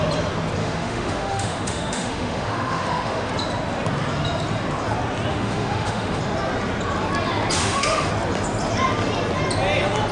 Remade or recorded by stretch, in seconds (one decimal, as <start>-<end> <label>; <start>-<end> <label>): 0.0-0.6 recorded; 0.6-3.3 remade; 3.3-5.3 recorded; 5.3-6.2 remade; 6.2-7.6 recorded; 7.6-8.1 remade; 8.1-10.1 recorded